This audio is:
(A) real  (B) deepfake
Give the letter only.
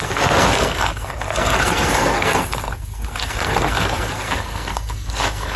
B